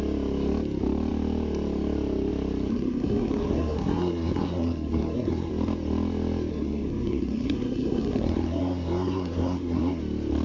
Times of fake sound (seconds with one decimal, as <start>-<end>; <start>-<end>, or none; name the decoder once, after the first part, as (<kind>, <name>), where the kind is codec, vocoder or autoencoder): 2.7-5.5 (codec, SNAC); 6.5-10.0